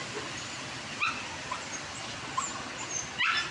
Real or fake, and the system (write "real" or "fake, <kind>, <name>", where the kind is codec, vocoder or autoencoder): real